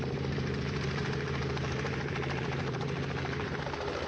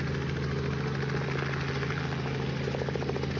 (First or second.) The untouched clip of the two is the second